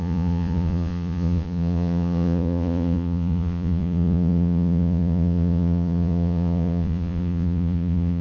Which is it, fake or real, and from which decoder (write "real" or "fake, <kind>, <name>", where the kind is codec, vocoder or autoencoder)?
fake, vocoder, Vocos